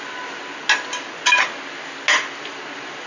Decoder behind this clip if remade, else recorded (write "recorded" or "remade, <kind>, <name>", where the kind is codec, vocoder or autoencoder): recorded